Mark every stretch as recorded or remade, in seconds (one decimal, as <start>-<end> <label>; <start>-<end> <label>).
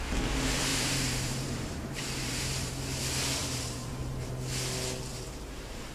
0.0-0.7 recorded; 0.7-2.7 remade; 2.7-3.4 recorded; 3.4-4.3 remade; 4.3-5.1 recorded; 5.1-5.9 remade